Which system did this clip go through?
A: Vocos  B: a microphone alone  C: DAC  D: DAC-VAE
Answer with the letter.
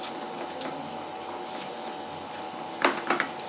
B